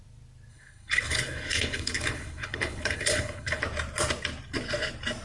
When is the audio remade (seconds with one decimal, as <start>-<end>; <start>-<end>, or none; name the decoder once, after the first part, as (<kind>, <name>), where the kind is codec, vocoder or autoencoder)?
0.5-3.6 (codec, HILCodec)